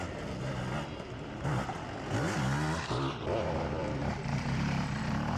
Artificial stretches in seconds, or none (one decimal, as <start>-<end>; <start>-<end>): 3.8-5.0